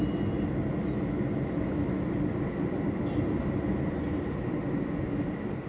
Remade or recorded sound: recorded